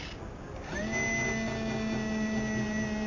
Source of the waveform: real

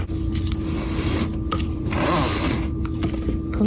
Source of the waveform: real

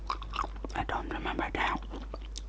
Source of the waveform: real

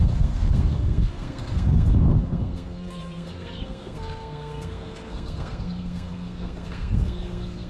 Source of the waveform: fake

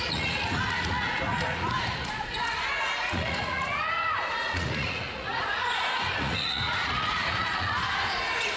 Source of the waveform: fake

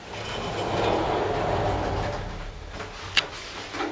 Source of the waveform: real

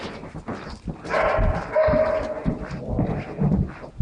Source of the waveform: real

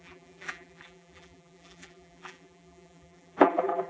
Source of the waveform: fake